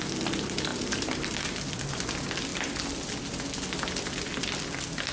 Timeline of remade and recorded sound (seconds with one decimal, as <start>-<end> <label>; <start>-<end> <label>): 0.0-5.1 recorded